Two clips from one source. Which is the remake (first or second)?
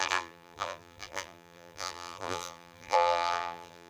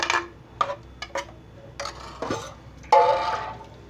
first